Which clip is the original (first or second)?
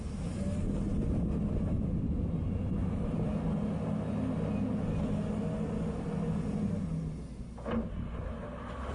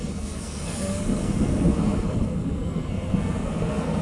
first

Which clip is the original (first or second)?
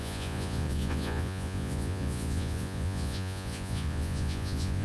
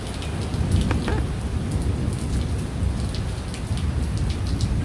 second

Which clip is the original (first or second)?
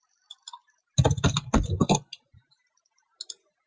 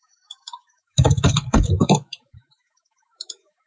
first